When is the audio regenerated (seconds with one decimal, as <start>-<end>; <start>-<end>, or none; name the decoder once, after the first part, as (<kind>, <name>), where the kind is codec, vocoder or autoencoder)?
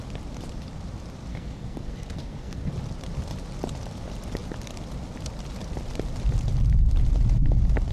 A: 1.3-2.7 (codec, SNAC)